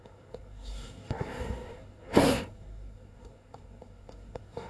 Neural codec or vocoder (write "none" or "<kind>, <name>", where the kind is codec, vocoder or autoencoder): codec, SNAC